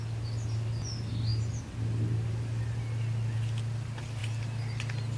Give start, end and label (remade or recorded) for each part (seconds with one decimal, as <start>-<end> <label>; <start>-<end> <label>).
0.0-1.3 recorded; 1.3-2.8 remade; 2.8-4.2 recorded; 4.2-5.2 remade